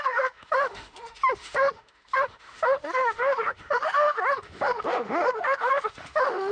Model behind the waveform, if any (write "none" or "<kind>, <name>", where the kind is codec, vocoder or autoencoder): autoencoder, DAC-VAE